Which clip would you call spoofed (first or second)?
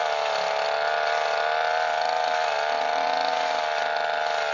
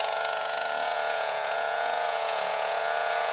second